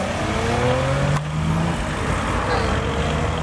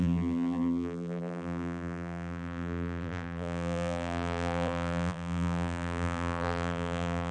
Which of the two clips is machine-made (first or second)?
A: second